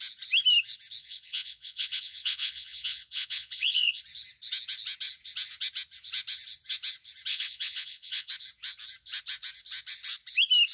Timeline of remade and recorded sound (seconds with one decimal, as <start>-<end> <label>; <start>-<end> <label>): 0.0-1.0 recorded; 1.0-4.0 remade; 4.0-7.3 recorded; 7.3-8.3 remade; 8.3-10.7 recorded